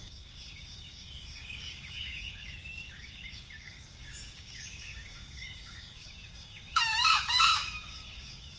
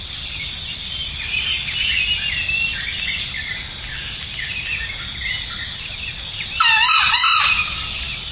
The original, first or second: second